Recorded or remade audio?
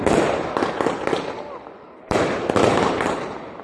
recorded